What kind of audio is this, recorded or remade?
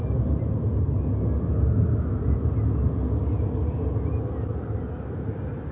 recorded